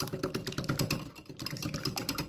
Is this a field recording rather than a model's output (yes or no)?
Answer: yes